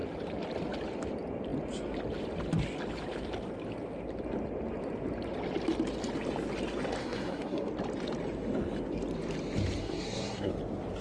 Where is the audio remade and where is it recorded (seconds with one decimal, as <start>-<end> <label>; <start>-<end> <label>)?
0.0-7.0 recorded; 7.0-7.7 remade; 7.7-9.8 recorded; 9.8-10.5 remade; 10.5-11.0 recorded